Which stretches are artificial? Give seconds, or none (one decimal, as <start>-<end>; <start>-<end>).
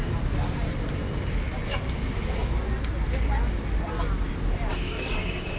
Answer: 4.7-5.6